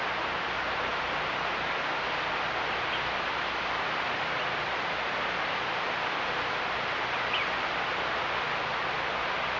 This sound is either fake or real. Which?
real